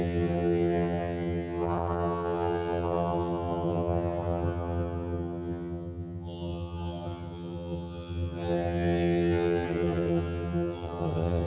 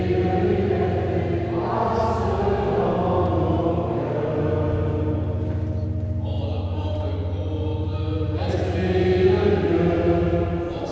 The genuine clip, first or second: second